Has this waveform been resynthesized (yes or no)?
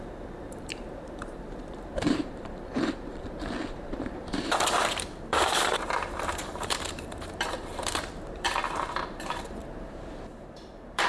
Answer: yes